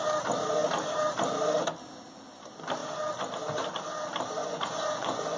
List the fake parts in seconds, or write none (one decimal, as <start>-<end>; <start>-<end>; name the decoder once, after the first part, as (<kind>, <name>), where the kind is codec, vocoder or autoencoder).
4.4-5.4 (vocoder, Vocos)